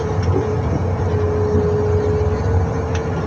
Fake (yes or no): no